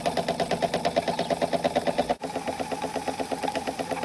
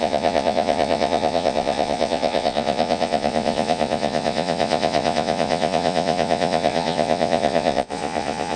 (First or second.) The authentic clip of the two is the first